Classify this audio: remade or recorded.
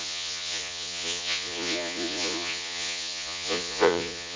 remade